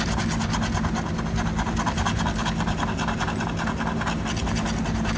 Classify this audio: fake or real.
real